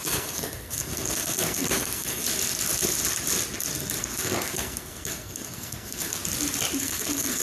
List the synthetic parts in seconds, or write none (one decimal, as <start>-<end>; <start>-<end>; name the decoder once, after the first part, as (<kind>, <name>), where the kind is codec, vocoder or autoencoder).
0.0-2.2 (codec, SNAC); 4.0-6.2; 6.8-7.4

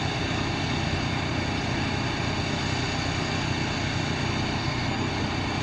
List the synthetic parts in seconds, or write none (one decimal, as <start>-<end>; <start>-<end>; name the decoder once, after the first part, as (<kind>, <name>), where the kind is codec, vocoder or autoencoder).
4.6-5.1 (codec, SNAC)